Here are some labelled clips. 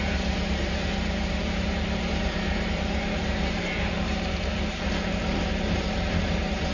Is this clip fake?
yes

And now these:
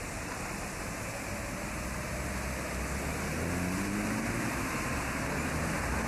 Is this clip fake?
yes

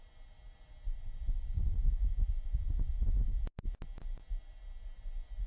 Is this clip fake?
no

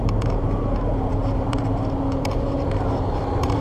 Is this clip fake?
yes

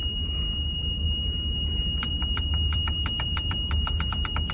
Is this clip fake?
yes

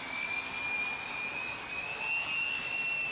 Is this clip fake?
no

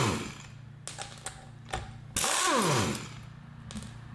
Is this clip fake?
no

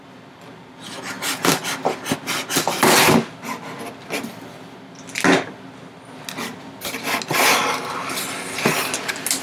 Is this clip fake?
no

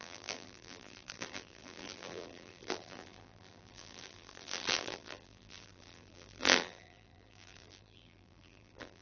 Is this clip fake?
yes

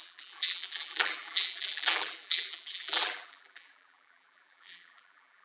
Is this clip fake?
yes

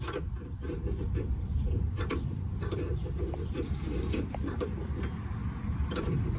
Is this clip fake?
yes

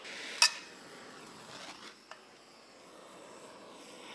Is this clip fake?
no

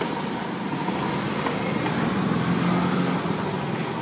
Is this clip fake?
no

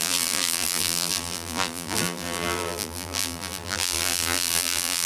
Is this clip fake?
yes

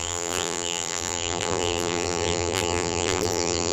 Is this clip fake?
yes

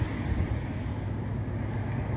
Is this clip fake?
no